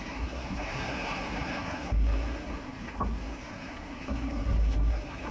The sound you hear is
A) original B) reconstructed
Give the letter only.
B